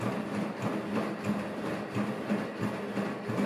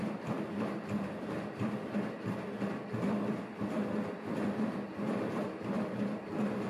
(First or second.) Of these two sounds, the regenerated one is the second